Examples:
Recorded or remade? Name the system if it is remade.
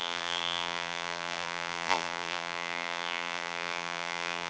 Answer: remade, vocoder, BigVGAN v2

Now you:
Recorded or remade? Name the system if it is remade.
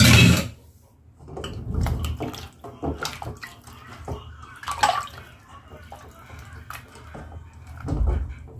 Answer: recorded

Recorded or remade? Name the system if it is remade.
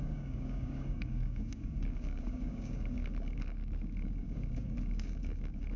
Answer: remade, codec, DAC